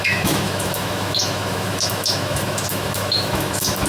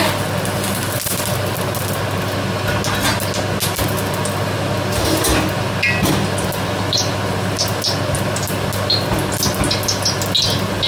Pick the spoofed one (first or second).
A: first